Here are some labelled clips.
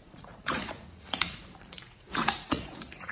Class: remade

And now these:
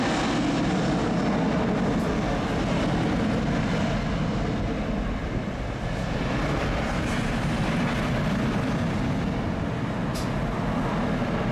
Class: recorded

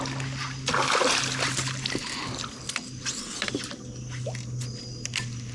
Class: recorded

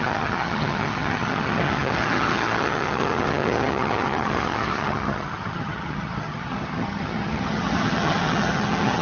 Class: remade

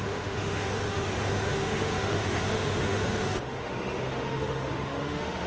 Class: remade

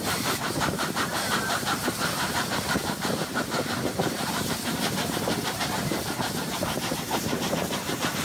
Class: remade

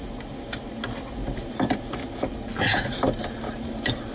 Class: recorded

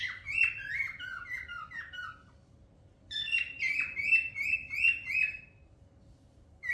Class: recorded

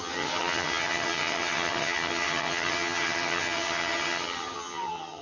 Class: remade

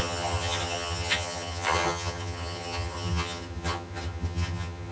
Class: remade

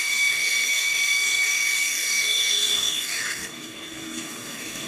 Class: remade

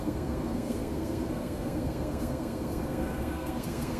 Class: remade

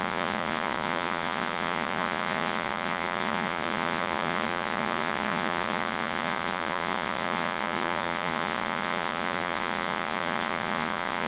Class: remade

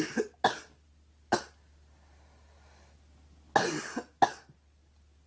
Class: recorded